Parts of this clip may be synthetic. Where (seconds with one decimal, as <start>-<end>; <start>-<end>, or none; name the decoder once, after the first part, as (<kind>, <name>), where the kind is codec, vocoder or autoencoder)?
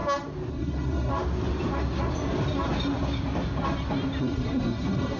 0.5-1.1 (codec, SNAC); 4.2-5.2